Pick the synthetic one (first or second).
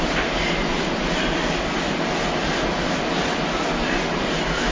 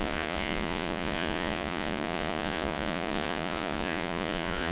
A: second